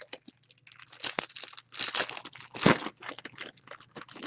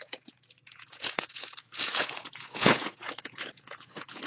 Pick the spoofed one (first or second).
second